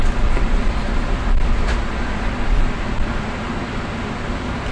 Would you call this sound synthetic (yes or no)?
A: no